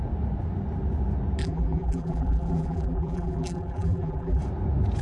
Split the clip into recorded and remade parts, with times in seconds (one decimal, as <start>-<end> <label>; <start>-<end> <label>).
0.0-1.4 recorded; 1.4-4.4 remade; 4.4-5.0 recorded